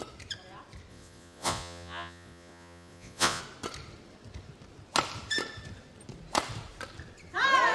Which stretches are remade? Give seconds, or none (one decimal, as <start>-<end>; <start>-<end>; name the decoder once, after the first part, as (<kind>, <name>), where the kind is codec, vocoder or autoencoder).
0.9-3.4 (vocoder, Vocos)